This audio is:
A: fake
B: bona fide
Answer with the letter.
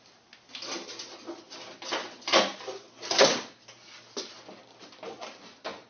B